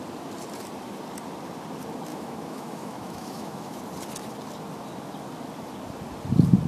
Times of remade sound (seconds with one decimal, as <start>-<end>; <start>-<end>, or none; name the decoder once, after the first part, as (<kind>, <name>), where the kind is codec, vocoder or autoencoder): 2.1-3.8 (autoencoder, DAC-VAE)